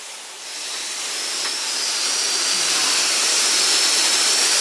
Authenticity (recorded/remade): recorded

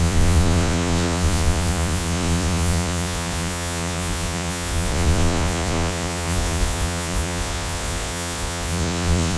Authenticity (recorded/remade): remade